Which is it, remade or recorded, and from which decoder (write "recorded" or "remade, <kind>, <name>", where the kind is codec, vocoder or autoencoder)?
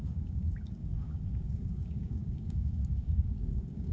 remade, codec, DAC